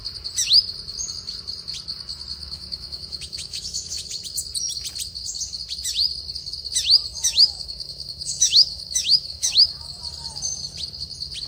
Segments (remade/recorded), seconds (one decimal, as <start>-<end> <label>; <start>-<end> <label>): 0.0-2.4 recorded; 2.4-4.1 remade; 4.1-7.1 recorded; 7.1-10.0 remade; 10.0-11.5 recorded